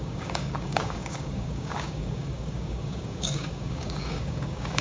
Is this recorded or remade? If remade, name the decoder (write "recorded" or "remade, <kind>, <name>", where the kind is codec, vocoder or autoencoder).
remade, codec, DAC